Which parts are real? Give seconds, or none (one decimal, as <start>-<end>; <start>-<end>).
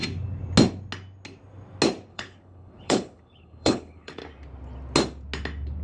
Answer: 0.0-2.1; 4.2-5.8